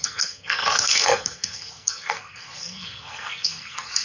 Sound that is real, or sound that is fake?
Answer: fake